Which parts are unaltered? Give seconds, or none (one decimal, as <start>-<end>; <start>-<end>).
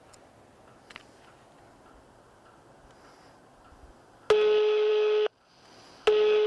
0.0-6.5